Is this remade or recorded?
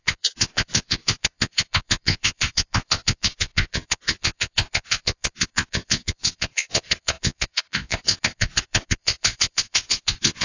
remade